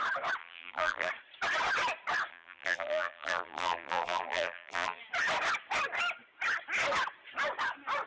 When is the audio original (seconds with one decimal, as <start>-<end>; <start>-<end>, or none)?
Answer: 0.0-0.4; 1.1-2.3; 5.0-8.1

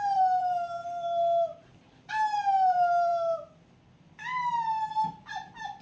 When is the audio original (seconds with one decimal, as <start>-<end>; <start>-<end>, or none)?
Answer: 0.8-2.1; 3.1-4.9

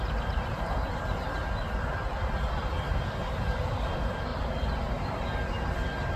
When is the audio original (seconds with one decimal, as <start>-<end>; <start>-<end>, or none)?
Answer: 4.3-6.2

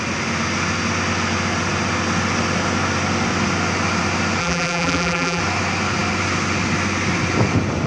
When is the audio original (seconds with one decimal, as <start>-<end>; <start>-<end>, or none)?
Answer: 0.0-4.4; 5.4-7.9

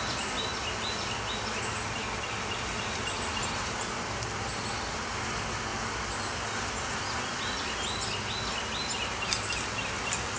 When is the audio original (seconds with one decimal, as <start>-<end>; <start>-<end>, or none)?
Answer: 0.0-3.4; 4.5-10.4

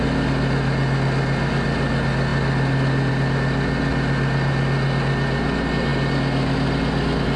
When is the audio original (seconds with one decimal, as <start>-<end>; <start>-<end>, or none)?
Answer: 0.0-7.4

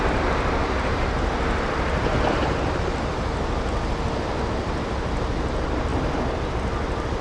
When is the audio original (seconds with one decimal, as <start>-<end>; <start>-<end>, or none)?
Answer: none

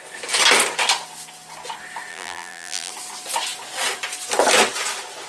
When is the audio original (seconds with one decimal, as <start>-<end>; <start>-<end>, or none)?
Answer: 0.0-2.1; 2.9-5.3